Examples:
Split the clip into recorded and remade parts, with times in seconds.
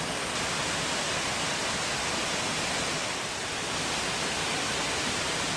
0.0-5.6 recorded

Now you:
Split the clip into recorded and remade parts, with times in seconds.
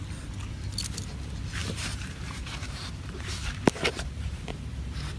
0.0-1.6 recorded; 1.6-4.7 remade; 4.7-5.2 recorded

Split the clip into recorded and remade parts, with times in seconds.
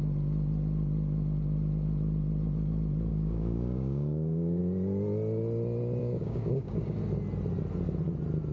0.0-3.1 recorded; 3.1-4.6 remade; 4.6-6.0 recorded; 6.0-7.0 remade; 7.0-8.5 recorded